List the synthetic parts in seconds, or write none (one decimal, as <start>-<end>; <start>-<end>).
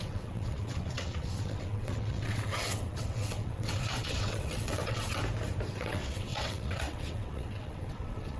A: 0.0-5.2; 5.7-8.4